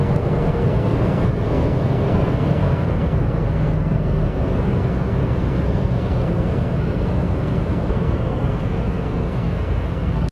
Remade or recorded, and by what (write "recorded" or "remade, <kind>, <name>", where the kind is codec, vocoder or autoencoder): remade, codec, SNAC